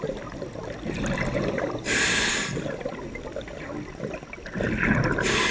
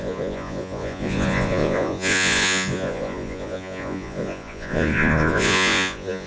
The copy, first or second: second